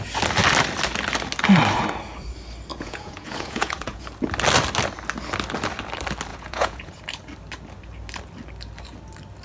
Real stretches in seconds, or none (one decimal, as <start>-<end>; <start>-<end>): 0.0-2.7; 4.0-6.3; 7.0-9.4

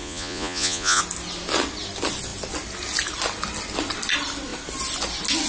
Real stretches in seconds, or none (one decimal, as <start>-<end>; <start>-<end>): 1.0-5.5

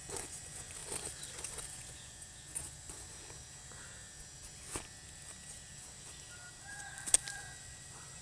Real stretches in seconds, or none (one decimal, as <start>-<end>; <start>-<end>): 0.8-1.7; 3.1-7.6

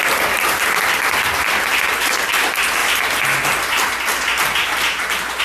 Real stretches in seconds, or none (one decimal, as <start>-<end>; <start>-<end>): 0.0-5.4

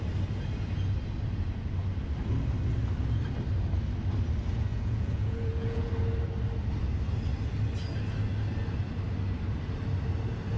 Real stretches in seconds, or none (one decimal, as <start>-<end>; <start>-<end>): 0.0-4.7; 5.9-10.6

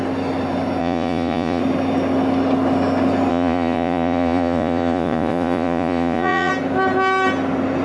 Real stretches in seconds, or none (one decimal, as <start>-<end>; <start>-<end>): 0.0-0.8; 1.6-3.3; 6.5-7.8